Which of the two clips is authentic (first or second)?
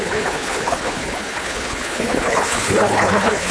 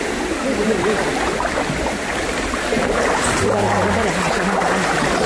second